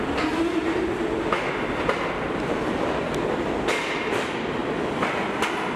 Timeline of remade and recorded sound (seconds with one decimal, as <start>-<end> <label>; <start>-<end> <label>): 0.0-0.6 remade; 0.6-4.1 recorded; 4.1-4.6 remade; 4.6-5.8 recorded